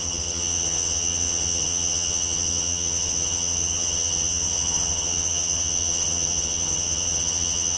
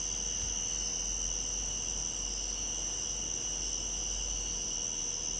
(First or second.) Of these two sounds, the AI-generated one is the first